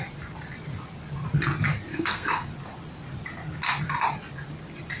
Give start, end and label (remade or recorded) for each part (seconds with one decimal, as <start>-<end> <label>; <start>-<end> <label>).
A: 0.0-1.9 recorded; 1.9-2.5 remade; 2.5-5.0 recorded